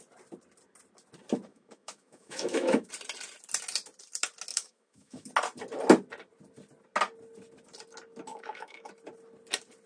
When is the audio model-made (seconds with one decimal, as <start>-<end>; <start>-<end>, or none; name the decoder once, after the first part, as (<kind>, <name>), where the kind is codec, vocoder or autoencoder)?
1.5-2.9 (autoencoder, DAC-VAE); 4.5-5.3; 8.3-8.9